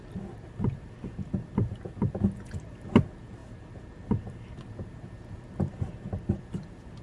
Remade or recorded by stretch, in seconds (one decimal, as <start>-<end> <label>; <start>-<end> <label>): 0.0-7.0 recorded